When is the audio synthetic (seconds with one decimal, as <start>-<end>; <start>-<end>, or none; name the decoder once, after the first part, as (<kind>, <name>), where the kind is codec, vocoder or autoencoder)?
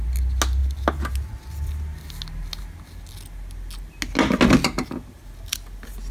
none